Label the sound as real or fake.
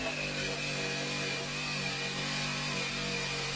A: real